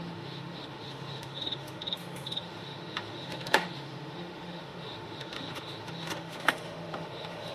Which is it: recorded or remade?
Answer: remade